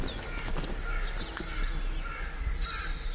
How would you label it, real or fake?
real